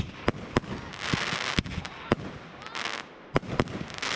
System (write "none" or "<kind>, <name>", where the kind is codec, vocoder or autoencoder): none